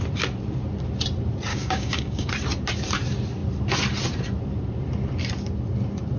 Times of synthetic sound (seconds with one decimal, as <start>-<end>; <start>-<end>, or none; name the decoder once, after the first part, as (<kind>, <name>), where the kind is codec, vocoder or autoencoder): 1.5-2.3 (codec, DAC)